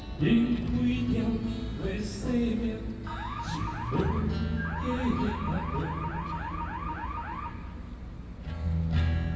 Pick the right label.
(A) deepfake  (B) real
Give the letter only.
B